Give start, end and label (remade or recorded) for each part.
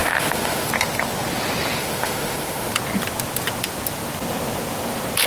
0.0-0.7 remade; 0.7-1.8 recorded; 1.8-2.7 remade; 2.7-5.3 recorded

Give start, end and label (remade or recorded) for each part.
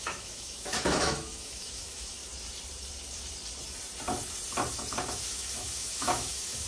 0.0-2.2 remade; 2.2-5.1 recorded; 5.1-6.7 remade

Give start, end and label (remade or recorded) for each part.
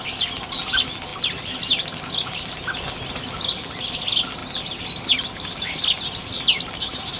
0.0-7.2 recorded